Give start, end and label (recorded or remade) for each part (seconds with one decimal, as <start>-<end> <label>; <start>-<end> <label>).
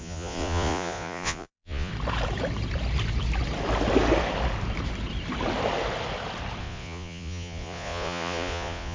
0.0-1.9 remade; 1.9-6.6 recorded; 6.6-8.9 remade